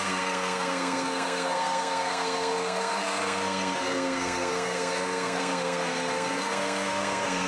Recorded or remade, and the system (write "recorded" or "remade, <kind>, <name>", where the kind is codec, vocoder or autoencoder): remade, codec, SNAC